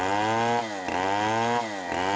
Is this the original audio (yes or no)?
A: yes